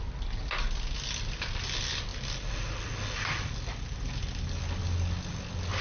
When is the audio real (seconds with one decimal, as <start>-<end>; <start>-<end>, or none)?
0.0-5.8